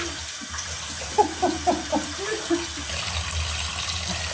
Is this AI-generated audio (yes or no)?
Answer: no